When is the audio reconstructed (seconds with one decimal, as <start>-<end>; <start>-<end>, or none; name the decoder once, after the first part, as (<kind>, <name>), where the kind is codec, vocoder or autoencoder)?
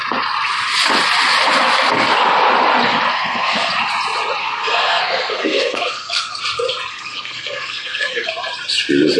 3.1-3.7 (codec, SNAC); 4.4-6.4; 6.9-8.3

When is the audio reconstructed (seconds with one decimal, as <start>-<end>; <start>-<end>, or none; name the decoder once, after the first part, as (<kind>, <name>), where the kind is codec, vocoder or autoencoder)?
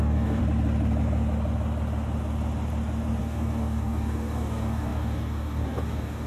0.0-0.4 (codec, DAC); 3.2-6.3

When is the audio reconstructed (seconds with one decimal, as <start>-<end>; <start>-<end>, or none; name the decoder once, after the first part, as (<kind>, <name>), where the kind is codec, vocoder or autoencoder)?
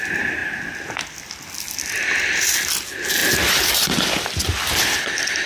none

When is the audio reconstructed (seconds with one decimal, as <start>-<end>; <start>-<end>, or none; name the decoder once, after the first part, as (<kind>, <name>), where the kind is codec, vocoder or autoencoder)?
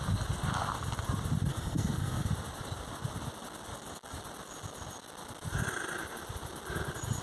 1.5-2.3 (codec, SNAC)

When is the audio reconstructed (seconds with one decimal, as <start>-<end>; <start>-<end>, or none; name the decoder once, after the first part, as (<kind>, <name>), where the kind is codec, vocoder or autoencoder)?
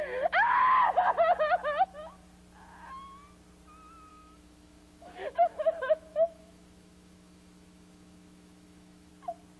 4.1-9.1 (autoencoder, DAC-VAE)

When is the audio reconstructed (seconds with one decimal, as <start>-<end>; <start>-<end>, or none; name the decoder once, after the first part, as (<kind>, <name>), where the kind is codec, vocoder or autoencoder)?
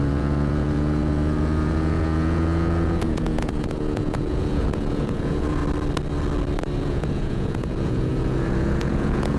0.0-5.6 (vocoder, Vocos); 6.8-9.4